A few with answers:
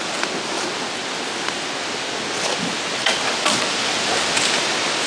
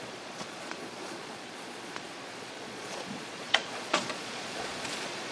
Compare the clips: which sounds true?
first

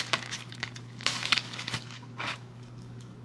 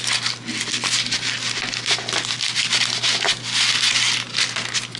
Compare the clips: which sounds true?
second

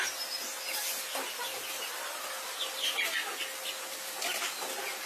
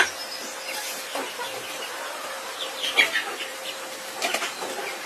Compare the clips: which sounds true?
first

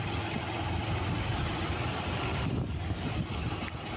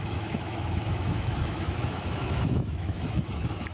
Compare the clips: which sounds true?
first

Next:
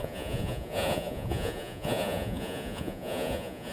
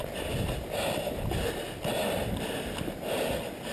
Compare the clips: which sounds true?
second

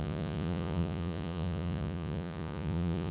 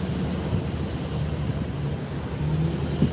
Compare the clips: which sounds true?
second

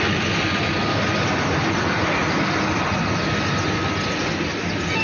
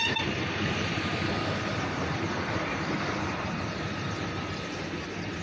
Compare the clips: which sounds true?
first